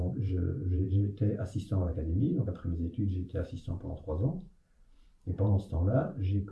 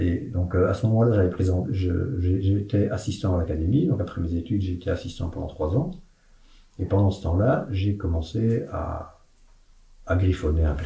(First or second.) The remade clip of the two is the first